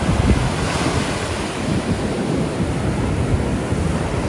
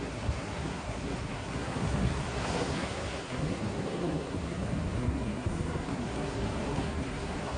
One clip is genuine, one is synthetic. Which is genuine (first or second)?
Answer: first